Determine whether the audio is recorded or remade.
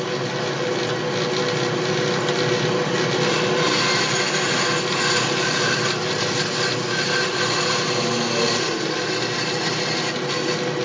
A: recorded